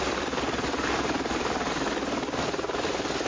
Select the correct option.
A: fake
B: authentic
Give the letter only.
A